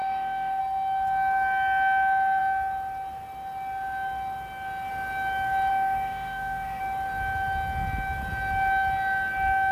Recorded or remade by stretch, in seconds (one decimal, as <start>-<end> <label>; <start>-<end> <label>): 0.0-0.6 remade; 0.6-5.7 recorded; 5.7-6.8 remade; 6.8-9.7 recorded